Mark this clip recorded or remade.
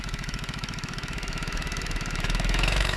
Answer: remade